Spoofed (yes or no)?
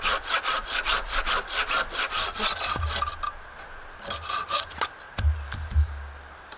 no